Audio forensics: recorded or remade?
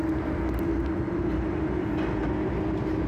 recorded